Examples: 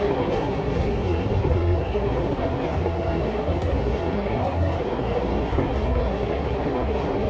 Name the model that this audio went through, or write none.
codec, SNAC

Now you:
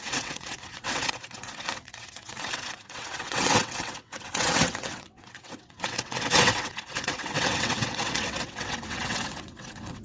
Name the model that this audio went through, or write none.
vocoder, WaveNeXt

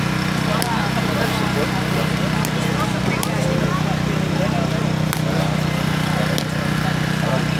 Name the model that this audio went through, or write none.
none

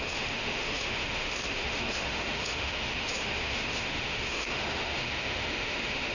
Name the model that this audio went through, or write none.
autoencoder, DAC-VAE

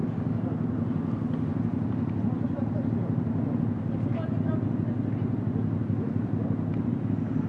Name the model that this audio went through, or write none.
none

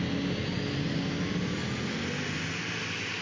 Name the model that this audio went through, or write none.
none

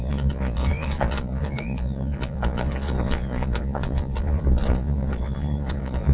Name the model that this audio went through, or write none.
vocoder, Vocos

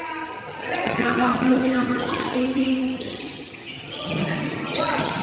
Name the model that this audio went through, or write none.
vocoder, HiFi-GAN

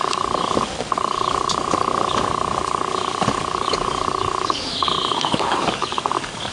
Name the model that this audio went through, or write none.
codec, DAC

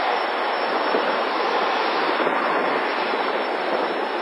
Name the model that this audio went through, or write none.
none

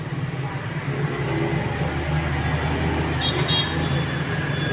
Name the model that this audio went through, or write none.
none